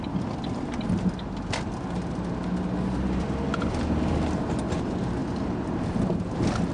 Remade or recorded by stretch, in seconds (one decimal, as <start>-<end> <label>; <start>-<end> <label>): 0.0-6.7 recorded